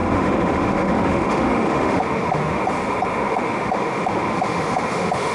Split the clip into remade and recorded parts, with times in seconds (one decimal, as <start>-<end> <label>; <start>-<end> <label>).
0.0-2.6 remade; 2.6-3.2 recorded; 3.2-5.3 remade